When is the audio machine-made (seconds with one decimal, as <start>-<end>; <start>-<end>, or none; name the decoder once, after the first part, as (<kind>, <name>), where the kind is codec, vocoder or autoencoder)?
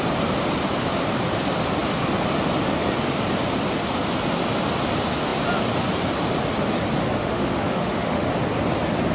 7.2-8.3 (autoencoder, DAC-VAE)